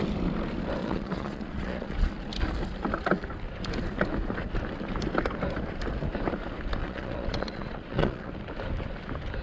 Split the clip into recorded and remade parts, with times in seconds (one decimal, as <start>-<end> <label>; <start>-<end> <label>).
0.0-0.8 recorded; 0.8-2.1 remade; 2.1-6.8 recorded; 6.8-8.3 remade; 8.3-9.4 recorded